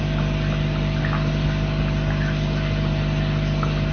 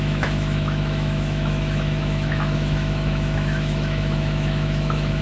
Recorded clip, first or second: first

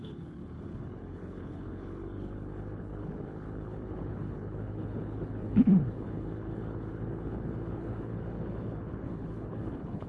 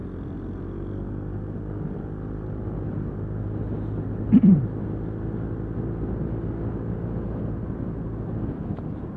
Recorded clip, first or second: second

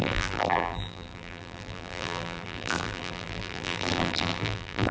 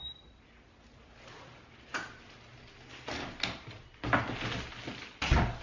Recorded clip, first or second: second